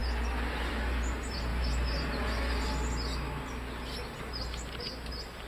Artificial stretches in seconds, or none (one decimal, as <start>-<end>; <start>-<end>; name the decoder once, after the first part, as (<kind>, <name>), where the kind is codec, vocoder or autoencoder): none